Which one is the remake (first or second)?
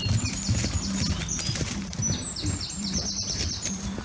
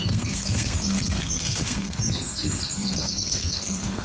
second